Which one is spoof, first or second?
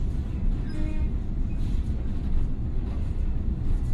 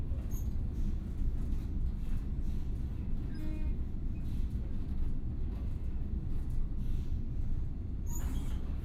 first